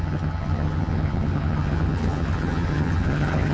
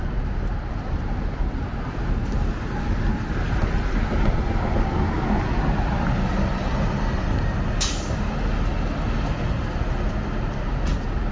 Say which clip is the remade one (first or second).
first